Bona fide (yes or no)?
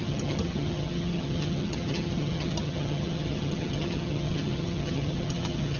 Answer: no